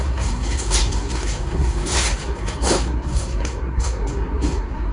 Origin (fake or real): fake